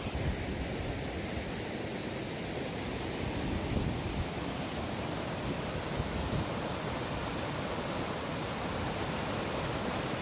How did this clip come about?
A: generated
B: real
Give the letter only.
B